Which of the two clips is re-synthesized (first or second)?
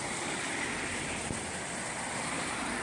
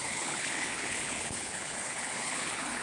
second